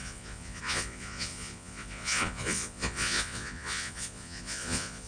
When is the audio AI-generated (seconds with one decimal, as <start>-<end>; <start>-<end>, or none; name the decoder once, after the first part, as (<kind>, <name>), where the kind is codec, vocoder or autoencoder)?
0.0-5.1 (vocoder, Vocos)